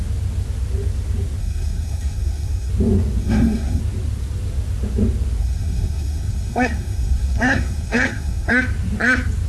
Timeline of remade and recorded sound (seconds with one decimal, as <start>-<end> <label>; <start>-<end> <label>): 0.0-1.4 recorded; 1.4-2.7 remade; 2.7-3.2 recorded; 3.2-3.8 remade; 3.8-5.4 recorded; 5.4-8.6 remade; 8.6-9.5 recorded